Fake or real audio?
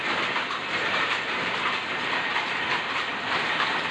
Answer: real